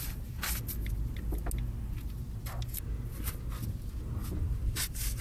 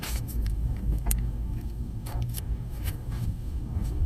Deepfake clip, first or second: second